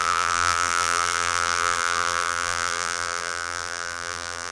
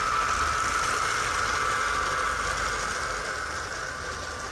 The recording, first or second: second